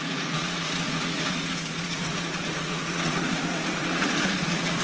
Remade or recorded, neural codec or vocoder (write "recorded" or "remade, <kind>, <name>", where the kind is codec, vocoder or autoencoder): remade, vocoder, Vocos